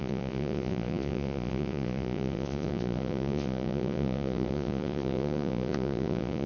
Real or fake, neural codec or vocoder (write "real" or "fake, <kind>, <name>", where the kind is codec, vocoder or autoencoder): fake, vocoder, Vocos